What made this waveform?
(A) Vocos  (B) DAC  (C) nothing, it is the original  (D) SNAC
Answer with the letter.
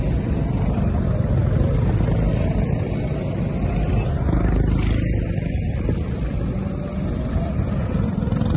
C